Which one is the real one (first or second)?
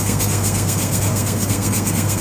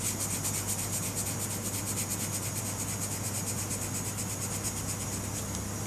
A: second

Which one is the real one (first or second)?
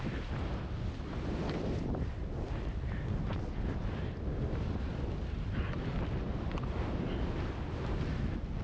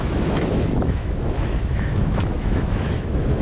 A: first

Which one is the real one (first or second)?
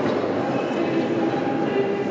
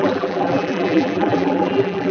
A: first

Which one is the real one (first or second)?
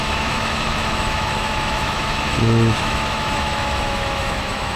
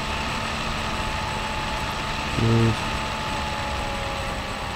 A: second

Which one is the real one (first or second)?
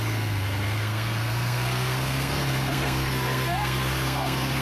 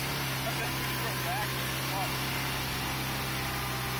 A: second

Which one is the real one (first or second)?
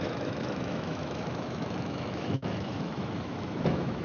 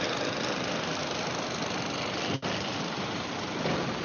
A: second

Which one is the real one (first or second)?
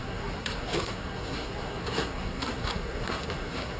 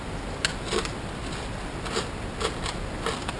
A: second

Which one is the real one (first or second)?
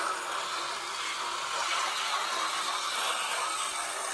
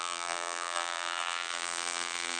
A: first